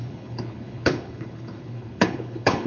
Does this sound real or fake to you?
fake